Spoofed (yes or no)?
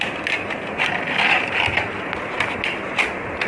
no